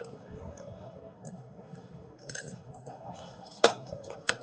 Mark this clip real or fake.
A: fake